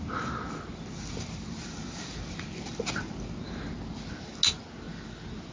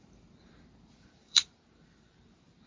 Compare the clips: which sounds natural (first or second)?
first